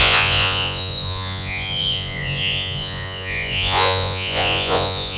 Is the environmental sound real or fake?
fake